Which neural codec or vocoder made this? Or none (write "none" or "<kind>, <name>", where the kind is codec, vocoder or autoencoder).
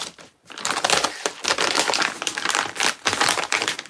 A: none